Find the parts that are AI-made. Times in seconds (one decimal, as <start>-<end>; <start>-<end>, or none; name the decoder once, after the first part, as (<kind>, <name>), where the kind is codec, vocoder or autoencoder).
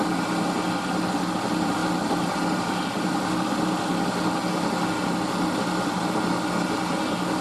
1.8-2.8 (vocoder, BigVGAN v2)